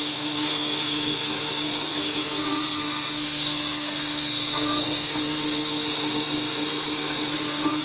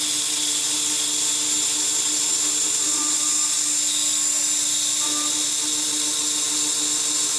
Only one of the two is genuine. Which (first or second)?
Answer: second